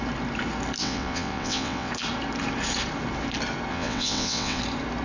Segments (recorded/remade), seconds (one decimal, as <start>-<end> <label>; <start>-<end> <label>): 0.0-0.8 recorded; 0.8-1.9 remade; 1.9-3.7 recorded; 3.7-4.6 remade; 4.6-5.0 recorded

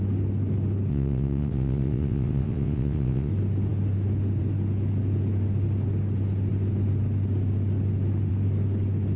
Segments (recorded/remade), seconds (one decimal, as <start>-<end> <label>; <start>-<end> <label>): 0.0-0.9 recorded; 0.9-3.3 remade; 3.3-9.2 recorded